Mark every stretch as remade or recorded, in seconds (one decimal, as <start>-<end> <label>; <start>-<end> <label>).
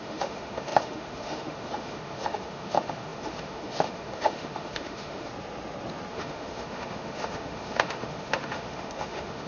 0.0-5.3 remade; 5.3-6.1 recorded; 6.1-9.5 remade